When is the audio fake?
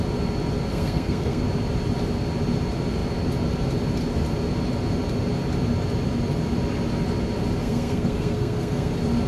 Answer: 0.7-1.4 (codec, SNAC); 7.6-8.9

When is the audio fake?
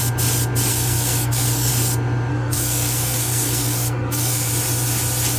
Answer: 0.7-1.7 (codec, SNAC); 2.3-4.5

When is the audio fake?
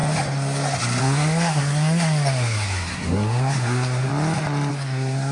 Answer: 1.0-4.1 (codec, SNAC); 4.7-5.3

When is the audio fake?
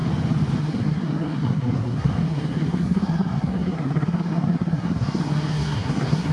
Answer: 0.6-6.3 (codec, SNAC)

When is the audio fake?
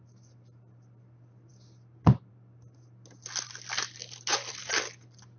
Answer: none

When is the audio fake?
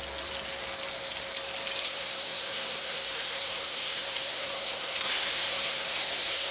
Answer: 1.8-6.5 (codec, SNAC)